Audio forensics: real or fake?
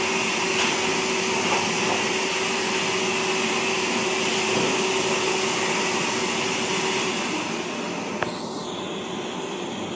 real